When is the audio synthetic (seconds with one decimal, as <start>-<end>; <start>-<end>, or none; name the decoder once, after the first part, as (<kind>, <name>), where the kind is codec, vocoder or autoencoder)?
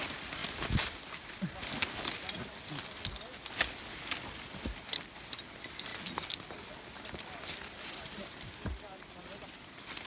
none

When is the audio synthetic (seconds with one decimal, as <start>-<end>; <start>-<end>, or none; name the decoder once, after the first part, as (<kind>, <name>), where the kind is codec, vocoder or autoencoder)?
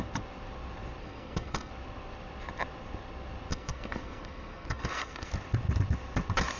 1.0-1.7 (codec, SNAC); 3.5-5.3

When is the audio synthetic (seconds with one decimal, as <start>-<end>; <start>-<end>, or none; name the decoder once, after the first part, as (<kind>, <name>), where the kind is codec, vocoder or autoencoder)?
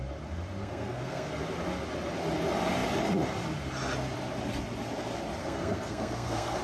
0.6-1.4 (codec, SNAC); 5.4-6.6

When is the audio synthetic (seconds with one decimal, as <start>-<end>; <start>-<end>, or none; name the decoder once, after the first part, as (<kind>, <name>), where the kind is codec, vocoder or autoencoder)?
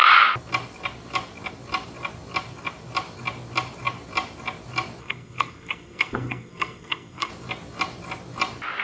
5.0-7.3 (codec, SNAC)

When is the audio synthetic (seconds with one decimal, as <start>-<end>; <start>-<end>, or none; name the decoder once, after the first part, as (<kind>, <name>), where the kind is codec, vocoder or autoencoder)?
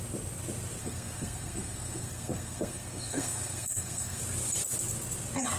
0.8-4.2 (codec, SNAC)